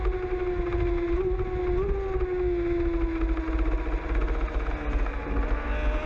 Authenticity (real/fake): real